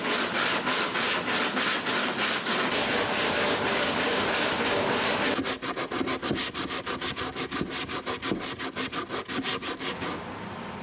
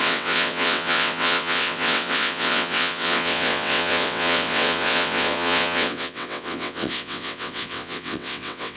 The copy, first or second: second